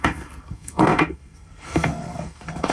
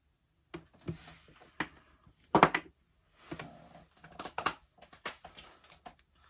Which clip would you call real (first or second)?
second